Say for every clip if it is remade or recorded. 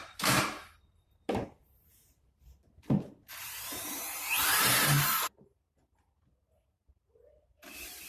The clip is remade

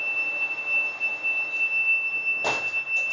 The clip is recorded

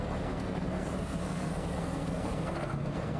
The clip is remade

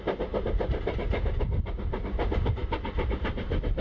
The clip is recorded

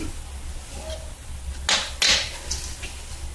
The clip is recorded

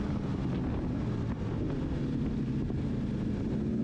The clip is recorded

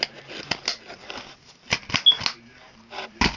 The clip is recorded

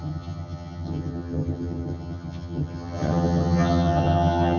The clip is remade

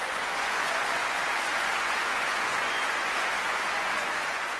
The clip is remade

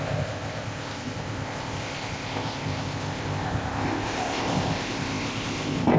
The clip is remade